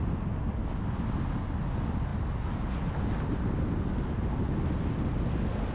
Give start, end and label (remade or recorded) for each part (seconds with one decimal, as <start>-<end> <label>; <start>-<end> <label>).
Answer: 0.0-5.7 recorded